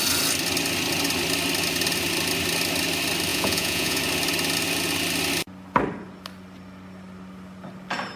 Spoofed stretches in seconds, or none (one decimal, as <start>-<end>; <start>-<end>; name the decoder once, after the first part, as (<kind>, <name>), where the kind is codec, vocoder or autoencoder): 3.3-4.0 (vocoder, Vocos)